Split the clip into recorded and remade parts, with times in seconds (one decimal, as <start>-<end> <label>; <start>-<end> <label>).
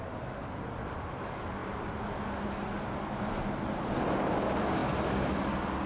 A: 0.0-4.8 recorded; 4.8-5.4 remade; 5.4-5.9 recorded